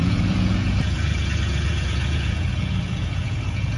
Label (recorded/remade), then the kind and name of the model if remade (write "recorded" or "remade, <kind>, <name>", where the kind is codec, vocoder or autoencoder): remade, vocoder, Vocos